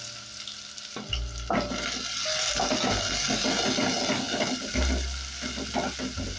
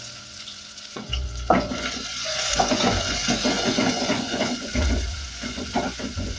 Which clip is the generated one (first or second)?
second